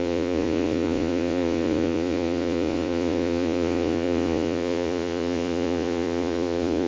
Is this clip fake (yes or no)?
yes